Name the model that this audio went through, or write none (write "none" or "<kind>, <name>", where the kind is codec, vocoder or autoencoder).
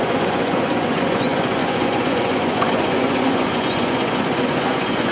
vocoder, Vocos